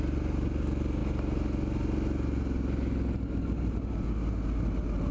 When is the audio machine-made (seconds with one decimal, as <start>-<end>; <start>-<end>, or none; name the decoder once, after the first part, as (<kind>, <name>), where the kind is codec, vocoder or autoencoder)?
none